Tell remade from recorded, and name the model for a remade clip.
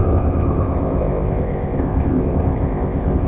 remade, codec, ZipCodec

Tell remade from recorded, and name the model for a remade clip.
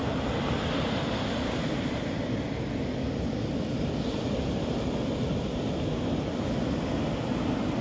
recorded